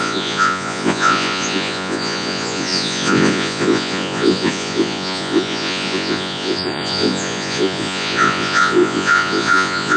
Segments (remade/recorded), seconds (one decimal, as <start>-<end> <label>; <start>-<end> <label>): 0.0-10.0 remade

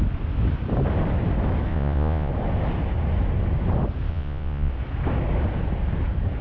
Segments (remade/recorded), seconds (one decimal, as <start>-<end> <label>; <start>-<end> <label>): 0.0-1.7 recorded; 1.7-2.3 remade; 2.3-4.1 recorded; 4.1-4.7 remade; 4.7-6.4 recorded

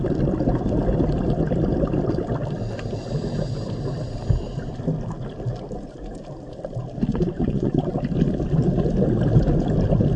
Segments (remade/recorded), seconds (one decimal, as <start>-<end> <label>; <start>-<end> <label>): 0.0-7.1 recorded; 7.1-7.9 remade; 7.9-10.2 recorded

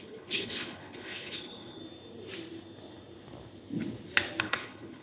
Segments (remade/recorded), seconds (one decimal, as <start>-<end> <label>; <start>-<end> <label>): 0.0-1.8 remade; 1.8-4.4 recorded; 4.4-5.0 remade

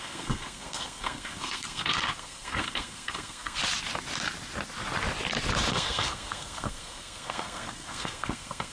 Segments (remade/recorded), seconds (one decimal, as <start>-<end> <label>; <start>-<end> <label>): 0.0-3.6 remade; 3.6-5.7 recorded; 5.7-8.7 remade